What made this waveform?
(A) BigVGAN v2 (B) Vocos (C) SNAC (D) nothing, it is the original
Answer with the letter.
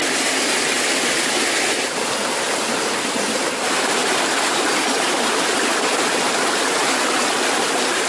D